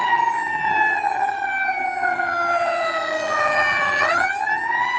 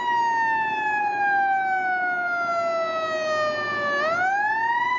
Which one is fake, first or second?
first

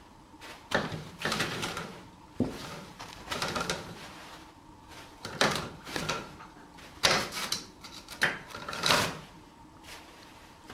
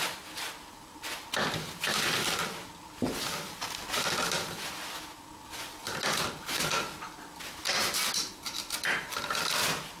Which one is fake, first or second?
first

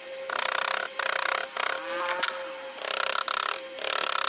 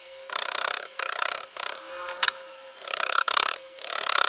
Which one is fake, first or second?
second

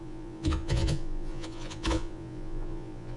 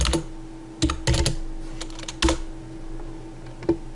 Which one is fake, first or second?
first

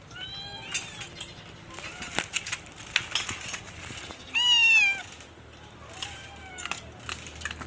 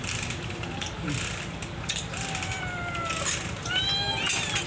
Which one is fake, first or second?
second